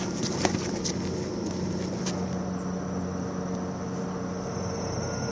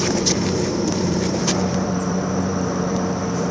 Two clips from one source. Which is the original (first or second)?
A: first